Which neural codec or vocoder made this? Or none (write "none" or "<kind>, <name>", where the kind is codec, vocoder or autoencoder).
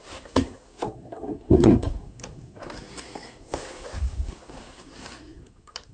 codec, SNAC